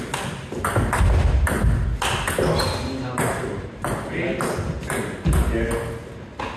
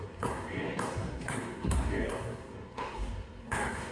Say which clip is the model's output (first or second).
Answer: second